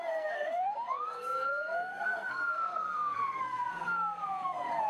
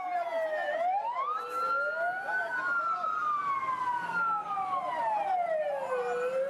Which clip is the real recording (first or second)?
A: second